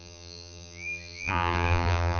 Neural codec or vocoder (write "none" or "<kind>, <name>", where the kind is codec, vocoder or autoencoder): vocoder, BigVGAN v2